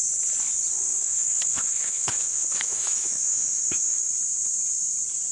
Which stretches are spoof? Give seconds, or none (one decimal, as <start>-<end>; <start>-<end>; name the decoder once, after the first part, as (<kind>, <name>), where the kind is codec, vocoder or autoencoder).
0.9-4.1 (autoencoder, DAC-VAE)